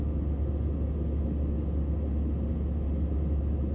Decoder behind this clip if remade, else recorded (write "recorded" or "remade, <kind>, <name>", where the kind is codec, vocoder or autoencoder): recorded